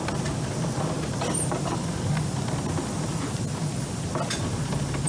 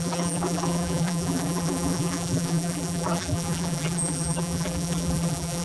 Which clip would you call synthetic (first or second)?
second